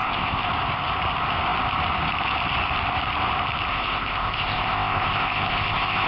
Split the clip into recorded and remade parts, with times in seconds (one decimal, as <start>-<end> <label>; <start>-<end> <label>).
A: 0.0-0.5 remade; 0.5-3.7 recorded; 3.7-6.1 remade